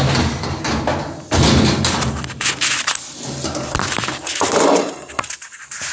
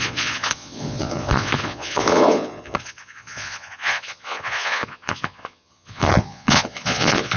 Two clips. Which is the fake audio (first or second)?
second